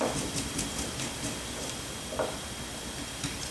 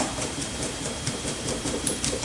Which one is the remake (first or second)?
second